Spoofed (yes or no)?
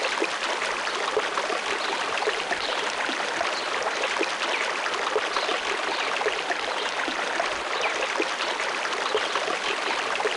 no